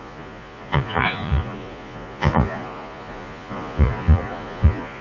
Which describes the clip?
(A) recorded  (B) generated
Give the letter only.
B